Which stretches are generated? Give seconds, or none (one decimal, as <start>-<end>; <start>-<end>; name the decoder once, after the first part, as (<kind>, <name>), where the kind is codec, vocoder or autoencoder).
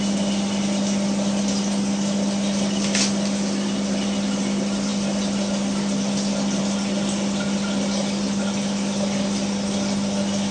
none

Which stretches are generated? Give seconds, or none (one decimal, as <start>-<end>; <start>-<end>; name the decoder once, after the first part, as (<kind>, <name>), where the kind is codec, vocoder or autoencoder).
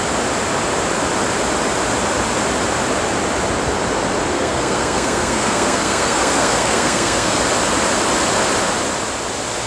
4.3-7.4 (codec, SNAC)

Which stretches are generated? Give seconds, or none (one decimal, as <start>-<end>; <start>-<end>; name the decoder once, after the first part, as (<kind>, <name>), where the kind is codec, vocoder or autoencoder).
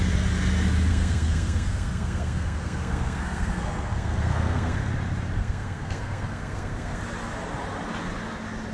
0.9-4.9 (codec, SNAC); 5.4-7.0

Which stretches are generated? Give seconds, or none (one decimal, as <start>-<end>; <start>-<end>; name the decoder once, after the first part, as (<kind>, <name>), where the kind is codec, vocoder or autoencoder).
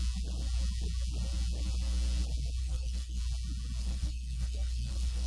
2.6-3.2 (codec, SNAC); 3.8-5.3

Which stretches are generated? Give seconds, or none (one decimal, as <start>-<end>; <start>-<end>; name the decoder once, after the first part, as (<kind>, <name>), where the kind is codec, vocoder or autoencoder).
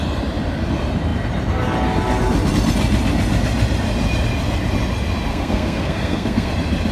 5.3-6.5 (codec, SNAC)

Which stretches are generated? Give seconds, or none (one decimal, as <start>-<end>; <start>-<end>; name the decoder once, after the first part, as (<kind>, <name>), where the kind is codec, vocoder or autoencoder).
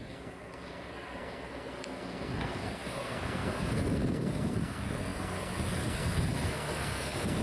0.0-7.4 (codec, SNAC)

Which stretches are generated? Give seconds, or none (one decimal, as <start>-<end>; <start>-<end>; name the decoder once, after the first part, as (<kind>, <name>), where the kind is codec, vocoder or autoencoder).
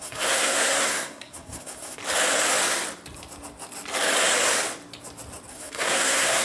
0.0-2.0 (codec, SNAC); 5.5-6.4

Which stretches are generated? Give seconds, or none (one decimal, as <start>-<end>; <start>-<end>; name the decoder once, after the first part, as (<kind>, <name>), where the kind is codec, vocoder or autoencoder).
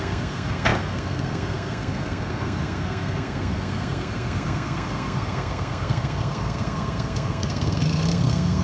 0.0-8.6 (codec, SNAC)